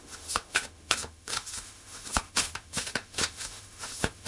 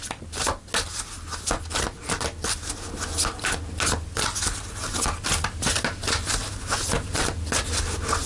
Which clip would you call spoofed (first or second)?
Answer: first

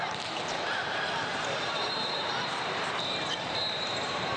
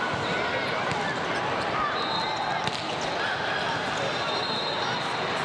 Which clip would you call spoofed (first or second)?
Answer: first